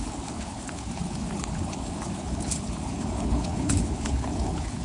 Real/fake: fake